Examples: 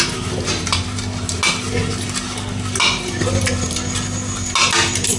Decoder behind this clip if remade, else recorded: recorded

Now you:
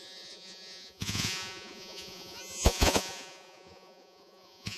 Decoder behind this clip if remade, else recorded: remade, vocoder, Vocos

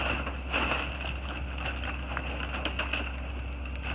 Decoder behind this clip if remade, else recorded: recorded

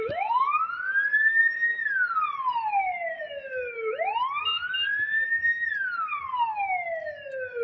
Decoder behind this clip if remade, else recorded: recorded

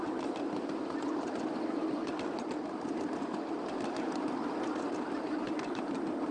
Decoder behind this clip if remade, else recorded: recorded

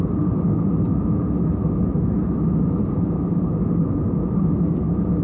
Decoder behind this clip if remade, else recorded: recorded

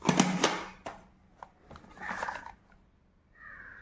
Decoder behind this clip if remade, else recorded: recorded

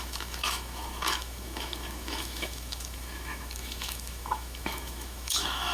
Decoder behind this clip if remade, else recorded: remade, autoencoder, DAC-VAE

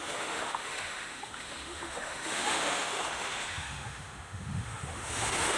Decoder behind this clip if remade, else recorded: remade, autoencoder, DAC-VAE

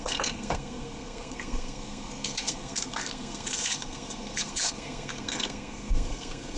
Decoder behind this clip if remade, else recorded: remade, codec, SNAC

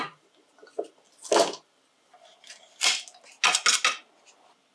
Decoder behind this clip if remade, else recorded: recorded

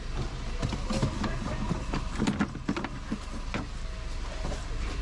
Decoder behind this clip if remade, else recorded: recorded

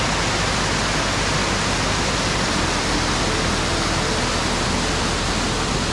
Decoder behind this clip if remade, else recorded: recorded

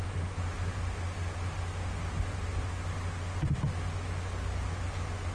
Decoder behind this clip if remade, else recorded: recorded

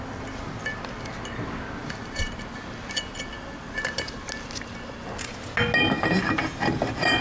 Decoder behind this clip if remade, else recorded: recorded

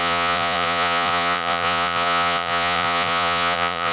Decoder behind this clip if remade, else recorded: remade, vocoder, Vocos